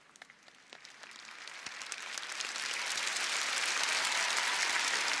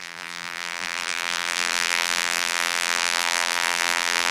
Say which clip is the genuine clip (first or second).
first